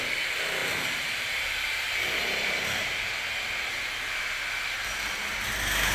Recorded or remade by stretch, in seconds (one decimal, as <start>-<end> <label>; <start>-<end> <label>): 0.0-0.6 recorded; 0.6-3.1 remade; 3.1-5.9 recorded